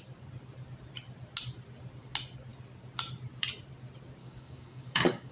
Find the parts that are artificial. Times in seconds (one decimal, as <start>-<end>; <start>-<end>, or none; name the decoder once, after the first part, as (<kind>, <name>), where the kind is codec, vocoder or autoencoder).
4.2-5.3 (codec, DAC)